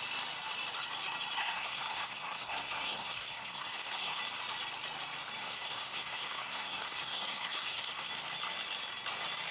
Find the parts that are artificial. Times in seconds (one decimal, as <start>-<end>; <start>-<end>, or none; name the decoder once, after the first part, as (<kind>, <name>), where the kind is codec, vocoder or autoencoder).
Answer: 1.4-4.2 (codec, SNAC); 5.4-8.1